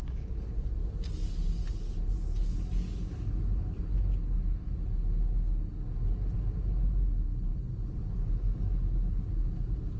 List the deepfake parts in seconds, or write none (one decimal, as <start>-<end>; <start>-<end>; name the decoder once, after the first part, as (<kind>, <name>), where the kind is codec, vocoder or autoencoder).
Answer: none